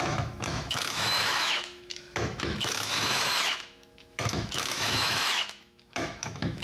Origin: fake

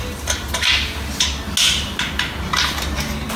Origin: real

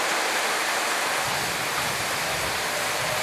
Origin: real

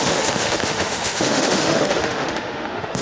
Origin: fake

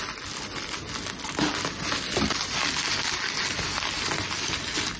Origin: real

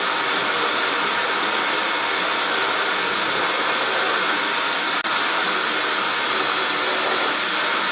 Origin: real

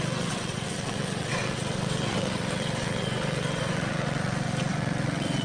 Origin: fake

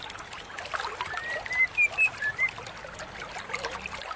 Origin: real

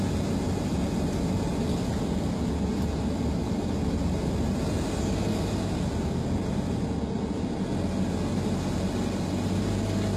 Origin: real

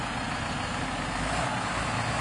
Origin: real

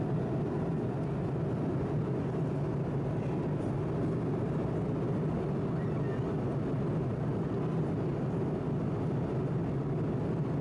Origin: real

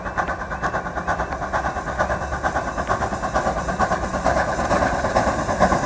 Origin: real